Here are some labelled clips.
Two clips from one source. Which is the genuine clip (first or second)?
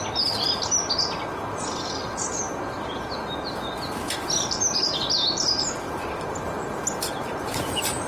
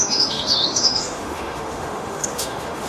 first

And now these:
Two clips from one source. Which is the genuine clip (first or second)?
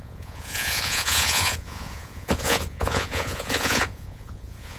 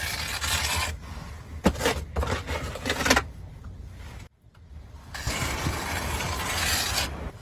second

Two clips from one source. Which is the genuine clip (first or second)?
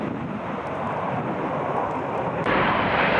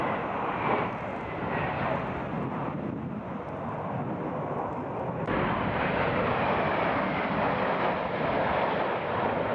second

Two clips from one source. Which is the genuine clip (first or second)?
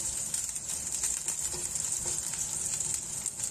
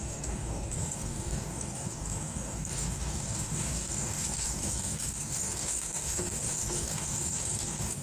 first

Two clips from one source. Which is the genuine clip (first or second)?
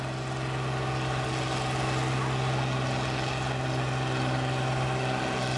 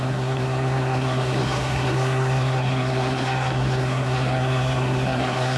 first